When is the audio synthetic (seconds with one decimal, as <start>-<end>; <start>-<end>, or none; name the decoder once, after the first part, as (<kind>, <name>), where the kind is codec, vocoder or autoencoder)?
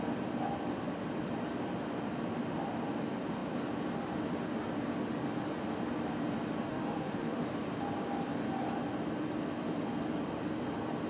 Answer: 6.7-7.4 (autoencoder, DAC-VAE)